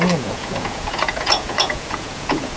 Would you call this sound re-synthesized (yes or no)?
yes